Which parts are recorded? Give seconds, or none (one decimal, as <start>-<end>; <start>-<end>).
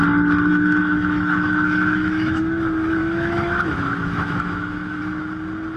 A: 0.0-0.5; 2.4-3.0; 5.0-5.8